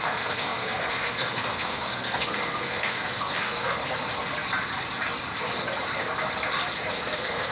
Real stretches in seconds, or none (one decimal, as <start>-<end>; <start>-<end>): 3.8-6.9